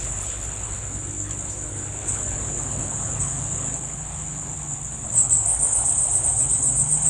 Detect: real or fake fake